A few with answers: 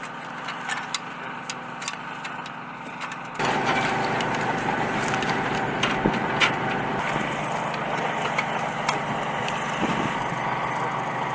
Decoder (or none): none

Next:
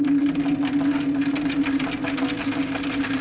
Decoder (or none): none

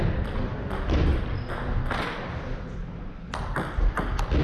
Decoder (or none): none